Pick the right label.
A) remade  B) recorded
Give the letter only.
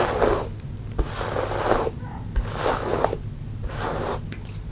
B